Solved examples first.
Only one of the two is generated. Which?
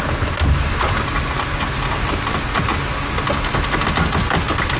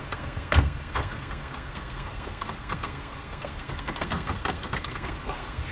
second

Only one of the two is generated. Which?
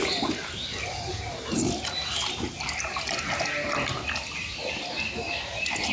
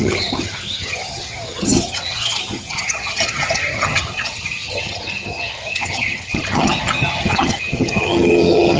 second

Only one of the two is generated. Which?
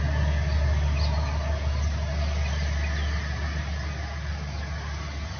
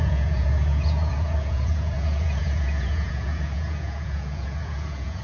second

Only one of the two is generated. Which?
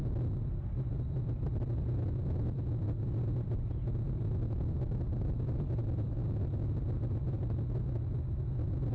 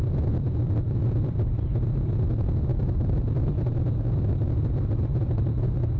second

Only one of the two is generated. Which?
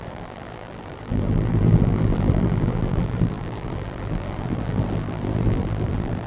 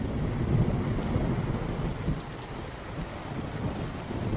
first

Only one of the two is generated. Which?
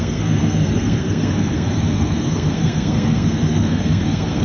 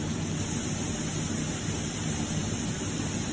first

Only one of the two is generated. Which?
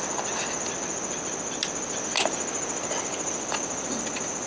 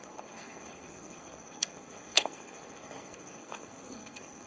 second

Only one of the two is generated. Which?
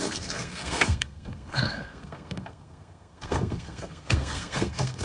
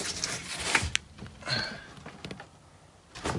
first